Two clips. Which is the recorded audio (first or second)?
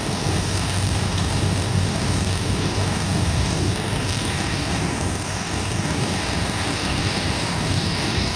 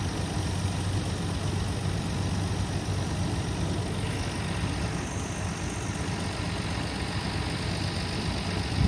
second